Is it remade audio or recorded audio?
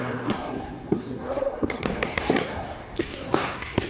remade